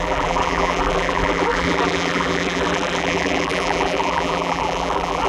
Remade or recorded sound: remade